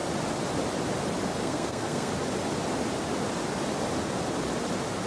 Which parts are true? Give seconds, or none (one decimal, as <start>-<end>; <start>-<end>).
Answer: 0.0-1.4; 2.1-5.1

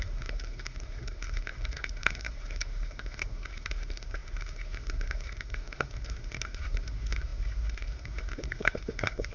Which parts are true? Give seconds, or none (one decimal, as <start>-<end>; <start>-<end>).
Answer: none

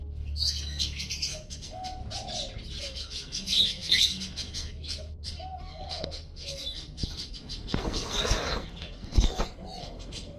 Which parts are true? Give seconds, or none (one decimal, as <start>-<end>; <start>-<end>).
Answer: 2.0-2.8

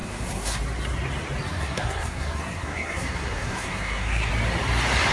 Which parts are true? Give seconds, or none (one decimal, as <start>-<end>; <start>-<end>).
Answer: 0.6-1.5; 4.3-5.1

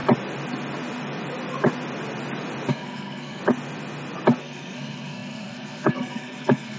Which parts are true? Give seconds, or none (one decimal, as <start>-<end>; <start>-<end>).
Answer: 0.0-2.7; 3.4-4.4

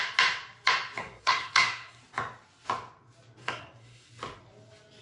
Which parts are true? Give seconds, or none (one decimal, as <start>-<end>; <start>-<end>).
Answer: 0.0-1.0; 2.0-3.4; 4.1-5.0